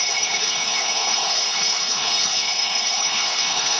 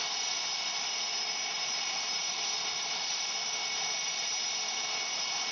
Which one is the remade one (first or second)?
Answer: first